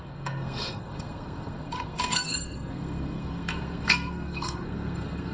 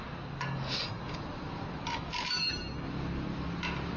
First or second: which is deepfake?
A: first